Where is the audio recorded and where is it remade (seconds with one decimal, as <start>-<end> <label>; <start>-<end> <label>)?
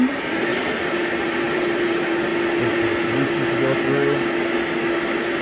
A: 0.0-0.5 remade; 0.5-1.1 recorded; 1.1-2.3 remade; 2.3-5.4 recorded